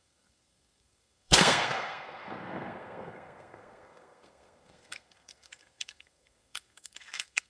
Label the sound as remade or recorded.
remade